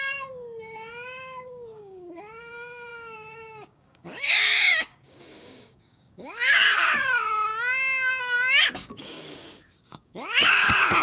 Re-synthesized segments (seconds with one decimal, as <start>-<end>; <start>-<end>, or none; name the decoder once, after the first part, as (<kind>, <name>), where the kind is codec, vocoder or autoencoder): 0.0-7.5 (codec, DAC); 8.2-11.0